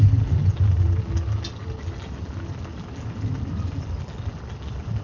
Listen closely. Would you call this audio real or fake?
real